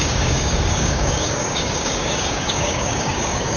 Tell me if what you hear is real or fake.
fake